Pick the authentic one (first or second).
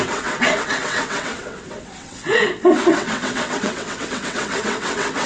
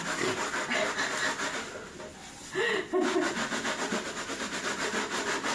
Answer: second